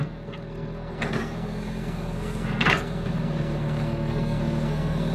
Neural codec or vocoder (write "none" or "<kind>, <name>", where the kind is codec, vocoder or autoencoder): codec, SNAC